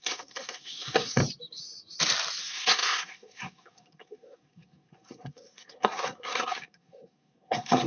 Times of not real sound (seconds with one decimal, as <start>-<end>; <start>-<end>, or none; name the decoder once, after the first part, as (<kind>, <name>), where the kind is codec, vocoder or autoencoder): 0.0-1.2 (codec, SNAC); 2.4-7.9